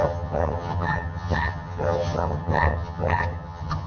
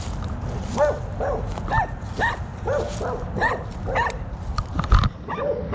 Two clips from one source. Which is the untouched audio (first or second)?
second